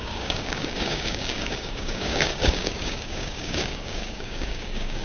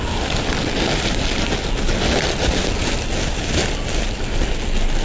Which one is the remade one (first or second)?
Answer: first